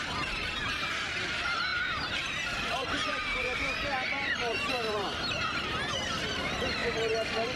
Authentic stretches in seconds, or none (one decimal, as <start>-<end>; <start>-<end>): 6.8-7.6